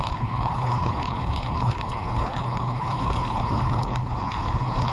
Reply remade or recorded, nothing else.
remade